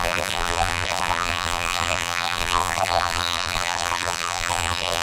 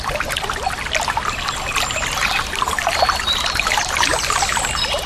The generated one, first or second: first